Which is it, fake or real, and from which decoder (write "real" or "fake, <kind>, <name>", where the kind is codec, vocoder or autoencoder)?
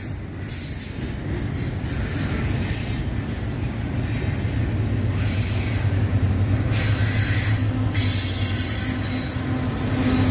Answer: real